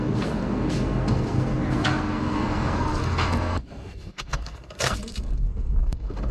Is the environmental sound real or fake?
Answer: fake